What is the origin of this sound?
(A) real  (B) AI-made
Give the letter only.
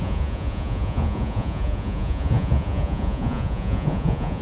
B